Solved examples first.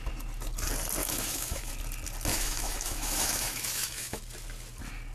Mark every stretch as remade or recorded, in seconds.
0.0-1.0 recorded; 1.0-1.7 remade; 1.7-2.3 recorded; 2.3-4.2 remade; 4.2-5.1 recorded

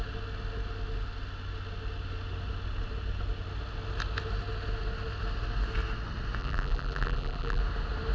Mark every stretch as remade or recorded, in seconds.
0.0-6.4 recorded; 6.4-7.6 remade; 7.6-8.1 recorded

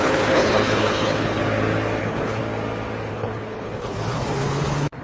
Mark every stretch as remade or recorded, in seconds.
0.0-1.4 remade; 1.4-2.0 recorded; 2.0-2.4 remade; 2.4-3.1 recorded; 3.1-5.0 remade

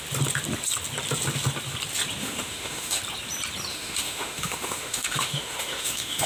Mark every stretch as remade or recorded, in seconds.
0.0-2.2 recorded; 2.2-3.0 remade; 3.0-3.7 recorded; 3.7-6.3 remade